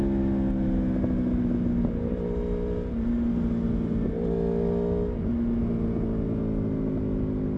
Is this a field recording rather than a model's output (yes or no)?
yes